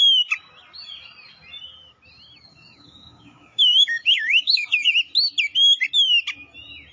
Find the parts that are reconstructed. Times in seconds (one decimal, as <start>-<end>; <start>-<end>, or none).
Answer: 2.5-4.9